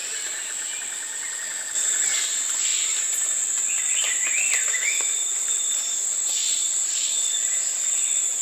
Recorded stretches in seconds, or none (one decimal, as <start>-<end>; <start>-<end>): 0.0-6.4; 7.1-8.4